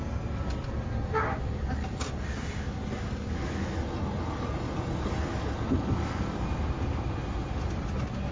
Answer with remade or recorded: recorded